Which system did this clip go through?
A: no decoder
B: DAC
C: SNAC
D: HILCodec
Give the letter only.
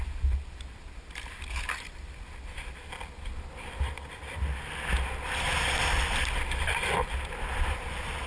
A